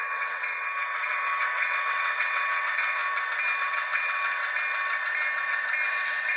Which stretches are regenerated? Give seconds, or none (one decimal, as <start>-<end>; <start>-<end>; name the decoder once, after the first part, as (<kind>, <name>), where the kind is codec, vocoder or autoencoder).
0.0-3.0 (vocoder, WaveNeXt); 3.6-4.4; 5.9-6.4